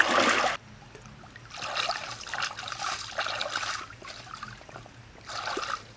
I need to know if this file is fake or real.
real